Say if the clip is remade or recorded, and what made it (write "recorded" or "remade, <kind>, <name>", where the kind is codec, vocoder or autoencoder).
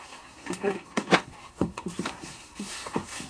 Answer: remade, codec, SNAC